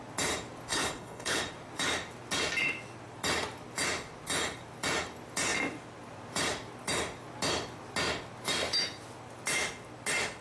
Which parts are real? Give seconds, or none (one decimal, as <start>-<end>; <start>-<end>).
0.0-0.7; 1.4-10.4